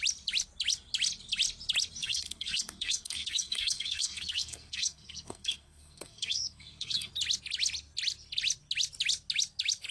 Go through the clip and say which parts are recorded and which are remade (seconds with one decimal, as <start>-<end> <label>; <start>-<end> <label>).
0.0-2.0 recorded; 2.0-7.1 remade; 7.1-9.9 recorded